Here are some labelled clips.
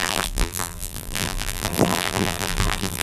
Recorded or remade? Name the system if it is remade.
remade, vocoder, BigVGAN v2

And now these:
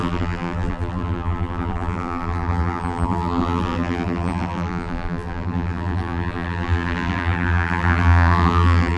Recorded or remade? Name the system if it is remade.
remade, vocoder, BigVGAN v2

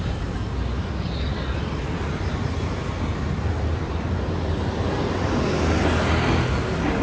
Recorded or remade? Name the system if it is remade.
recorded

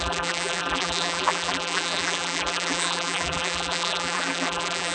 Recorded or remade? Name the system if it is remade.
remade, vocoder, BigVGAN v2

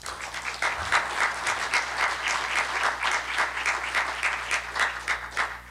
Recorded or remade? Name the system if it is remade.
recorded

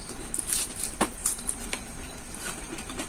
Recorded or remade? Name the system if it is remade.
remade, vocoder, BigVGAN v2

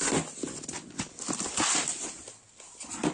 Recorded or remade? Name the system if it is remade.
recorded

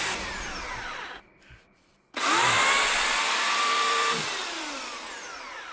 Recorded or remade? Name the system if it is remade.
remade, vocoder, BigVGAN v2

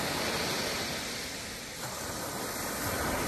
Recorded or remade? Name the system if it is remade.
recorded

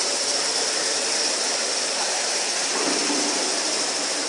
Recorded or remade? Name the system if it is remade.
remade, vocoder, BigVGAN v2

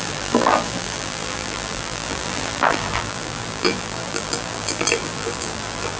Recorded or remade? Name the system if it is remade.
remade, vocoder, BigVGAN v2